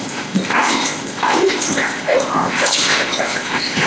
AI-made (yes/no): yes